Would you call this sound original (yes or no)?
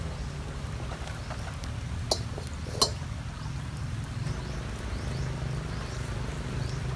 yes